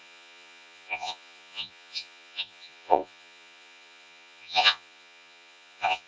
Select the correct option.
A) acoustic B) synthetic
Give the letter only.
B